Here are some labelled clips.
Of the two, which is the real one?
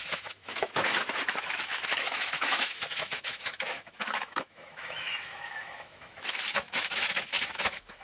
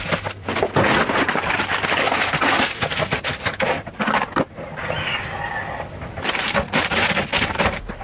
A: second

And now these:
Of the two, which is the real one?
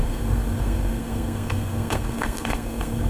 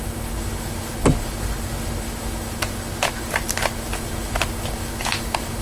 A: second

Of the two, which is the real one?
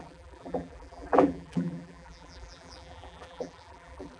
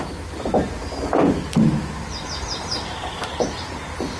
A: second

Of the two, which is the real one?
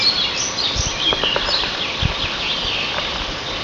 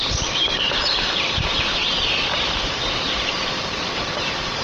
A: first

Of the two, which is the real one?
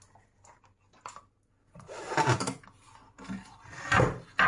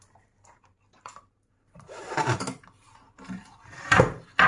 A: first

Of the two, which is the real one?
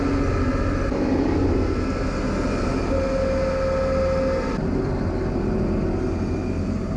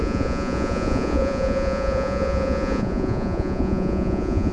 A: first